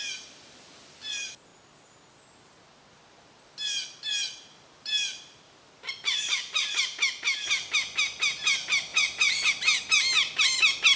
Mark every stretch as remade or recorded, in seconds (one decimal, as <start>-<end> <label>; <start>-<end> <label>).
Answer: 0.0-8.9 recorded; 8.9-9.5 remade; 9.5-11.0 recorded